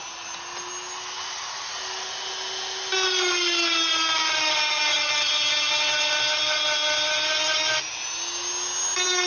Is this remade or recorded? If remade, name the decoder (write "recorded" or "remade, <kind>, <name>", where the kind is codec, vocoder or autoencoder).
recorded